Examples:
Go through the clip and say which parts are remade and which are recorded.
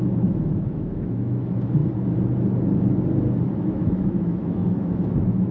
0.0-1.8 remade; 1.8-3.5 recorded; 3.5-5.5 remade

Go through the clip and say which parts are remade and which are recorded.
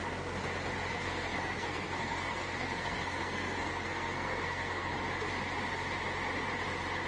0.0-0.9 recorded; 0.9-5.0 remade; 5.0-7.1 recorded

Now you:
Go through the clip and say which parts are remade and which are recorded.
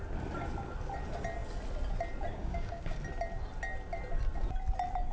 0.0-2.3 recorded; 2.3-3.0 remade; 3.0-5.1 recorded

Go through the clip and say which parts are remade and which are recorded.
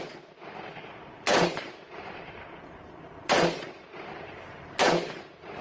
0.0-1.3 recorded; 1.3-4.7 remade; 4.7-5.6 recorded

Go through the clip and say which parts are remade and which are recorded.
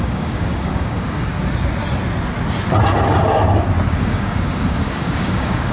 0.0-1.3 remade; 1.3-4.0 recorded; 4.0-5.7 remade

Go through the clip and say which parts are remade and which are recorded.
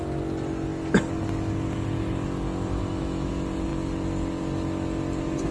0.0-2.8 recorded; 2.8-3.3 remade; 3.3-5.5 recorded